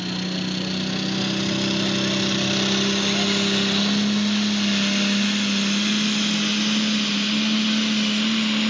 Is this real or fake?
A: real